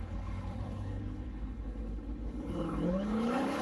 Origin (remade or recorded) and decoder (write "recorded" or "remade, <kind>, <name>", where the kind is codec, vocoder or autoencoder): remade, codec, HILCodec